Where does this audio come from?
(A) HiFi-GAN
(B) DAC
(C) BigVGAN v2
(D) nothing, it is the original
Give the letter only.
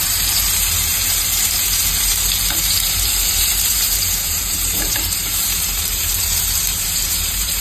C